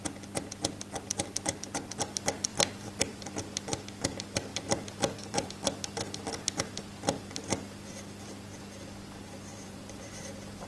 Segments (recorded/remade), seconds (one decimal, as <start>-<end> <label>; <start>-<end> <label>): 0.0-2.5 recorded; 2.5-3.3 remade; 3.3-4.5 recorded; 4.5-5.5 remade; 5.5-9.5 recorded; 9.5-10.1 remade; 10.1-10.7 recorded